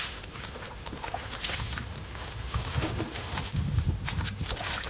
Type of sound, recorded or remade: remade